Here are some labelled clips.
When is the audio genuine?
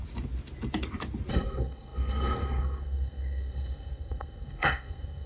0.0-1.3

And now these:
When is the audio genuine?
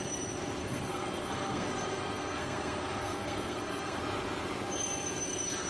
0.0-0.6; 4.0-5.7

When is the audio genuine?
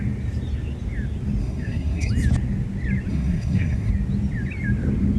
0.0-1.4; 2.1-3.1; 3.9-5.2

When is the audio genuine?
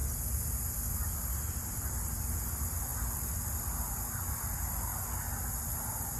0.0-6.2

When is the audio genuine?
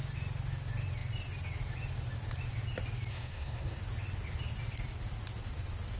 0.0-3.1; 3.8-6.0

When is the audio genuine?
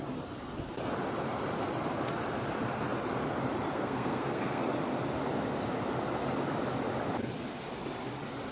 0.0-3.7; 4.6-8.5